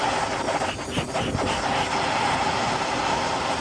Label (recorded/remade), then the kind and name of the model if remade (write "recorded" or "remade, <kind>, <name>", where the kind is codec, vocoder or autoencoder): recorded